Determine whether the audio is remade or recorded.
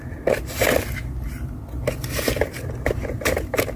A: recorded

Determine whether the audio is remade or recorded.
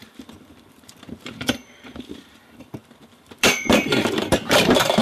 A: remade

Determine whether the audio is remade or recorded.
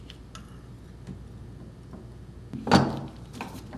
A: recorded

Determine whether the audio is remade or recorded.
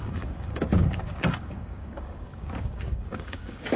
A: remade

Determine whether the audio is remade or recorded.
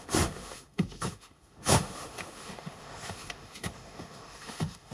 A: remade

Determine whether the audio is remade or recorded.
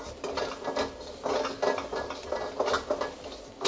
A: recorded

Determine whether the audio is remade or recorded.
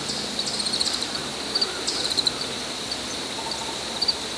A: recorded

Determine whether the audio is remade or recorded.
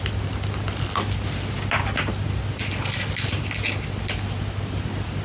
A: recorded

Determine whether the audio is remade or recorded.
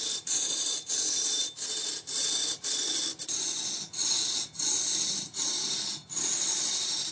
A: recorded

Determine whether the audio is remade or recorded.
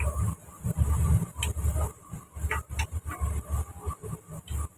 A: recorded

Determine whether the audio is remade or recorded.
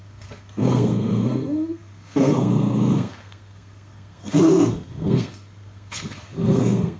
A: remade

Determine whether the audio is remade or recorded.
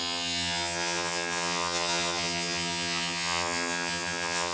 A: remade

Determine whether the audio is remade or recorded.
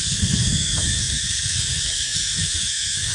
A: remade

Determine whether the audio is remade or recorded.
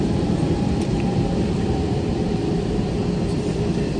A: remade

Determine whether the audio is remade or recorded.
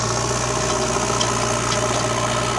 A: recorded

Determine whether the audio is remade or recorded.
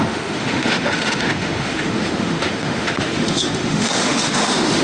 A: remade